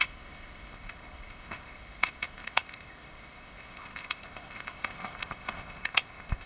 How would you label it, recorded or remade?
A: remade